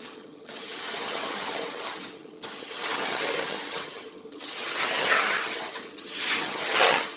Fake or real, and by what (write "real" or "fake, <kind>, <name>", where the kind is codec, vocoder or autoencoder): fake, vocoder, HiFi-GAN